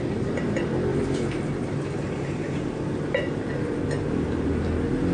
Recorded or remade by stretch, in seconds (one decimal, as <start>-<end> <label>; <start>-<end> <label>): 0.0-0.9 recorded; 0.9-3.5 remade; 3.5-5.1 recorded